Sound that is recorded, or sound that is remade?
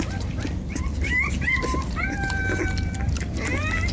recorded